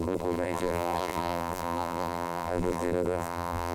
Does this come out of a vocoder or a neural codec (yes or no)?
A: yes